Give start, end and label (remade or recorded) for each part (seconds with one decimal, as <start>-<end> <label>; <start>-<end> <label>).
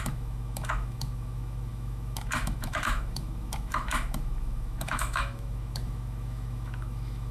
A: 0.0-7.3 remade